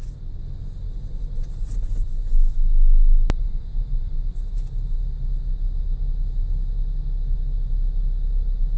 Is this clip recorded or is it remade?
recorded